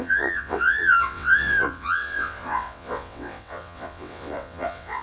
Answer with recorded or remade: remade